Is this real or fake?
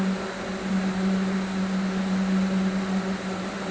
real